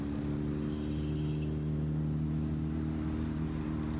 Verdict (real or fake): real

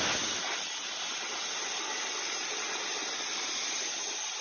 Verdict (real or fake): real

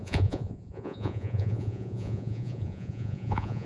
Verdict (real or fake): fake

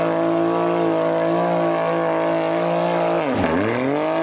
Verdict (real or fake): real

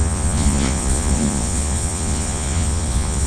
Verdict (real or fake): fake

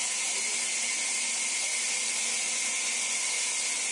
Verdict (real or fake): real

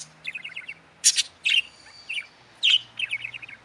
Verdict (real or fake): real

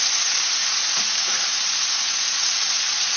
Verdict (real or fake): fake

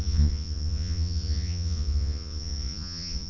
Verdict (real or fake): fake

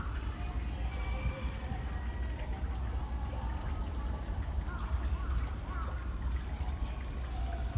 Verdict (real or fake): real